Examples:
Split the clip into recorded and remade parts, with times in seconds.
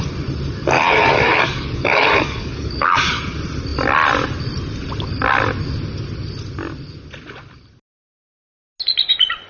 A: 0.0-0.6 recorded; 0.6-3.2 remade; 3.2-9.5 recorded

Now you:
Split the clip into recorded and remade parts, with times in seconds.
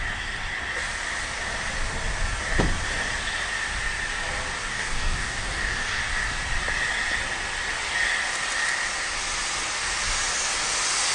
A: 0.0-4.7 recorded; 4.7-6.0 remade; 6.0-11.1 recorded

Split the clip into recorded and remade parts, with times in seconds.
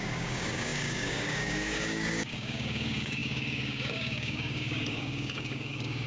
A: 0.0-6.1 remade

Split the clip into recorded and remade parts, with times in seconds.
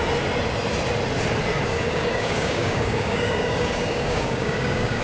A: 0.0-1.7 recorded; 1.7-5.0 remade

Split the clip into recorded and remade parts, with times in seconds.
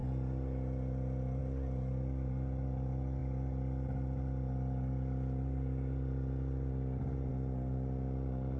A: 0.0-8.6 recorded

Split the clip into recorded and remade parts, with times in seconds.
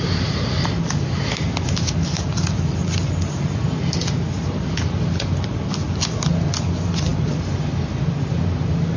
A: 0.0-9.0 recorded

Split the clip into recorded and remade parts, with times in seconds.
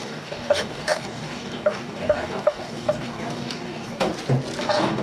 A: 0.0-4.1 remade; 4.1-4.6 recorded; 4.6-5.0 remade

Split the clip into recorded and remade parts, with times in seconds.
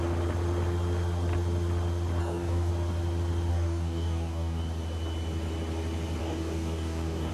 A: 0.0-2.2 recorded; 2.2-2.7 remade; 2.7-3.5 recorded; 3.5-4.6 remade; 4.6-6.2 recorded; 6.2-7.3 remade